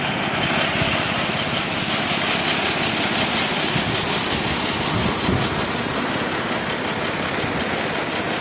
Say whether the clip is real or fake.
real